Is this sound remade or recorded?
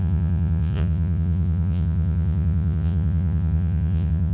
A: remade